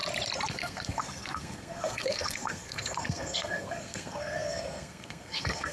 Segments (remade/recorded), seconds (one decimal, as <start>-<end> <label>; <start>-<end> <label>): 0.0-0.5 recorded; 0.5-5.7 remade